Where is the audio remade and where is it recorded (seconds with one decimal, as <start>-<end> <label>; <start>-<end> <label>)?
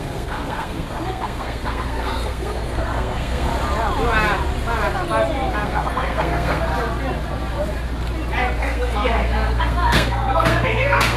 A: 0.0-3.5 remade; 3.5-5.5 recorded; 5.5-6.7 remade; 6.7-8.6 recorded; 8.6-11.2 remade